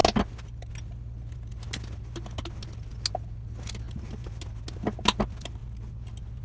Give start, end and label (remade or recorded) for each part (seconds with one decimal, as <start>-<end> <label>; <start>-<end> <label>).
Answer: 0.0-6.4 recorded